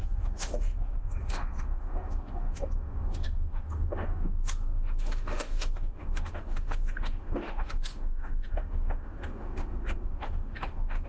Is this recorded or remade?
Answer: remade